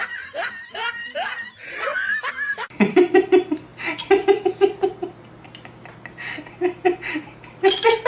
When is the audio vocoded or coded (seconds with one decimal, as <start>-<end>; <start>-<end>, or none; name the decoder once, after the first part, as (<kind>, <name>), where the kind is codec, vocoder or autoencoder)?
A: 0.0-1.9 (vocoder, BigVGAN v2); 2.5-8.1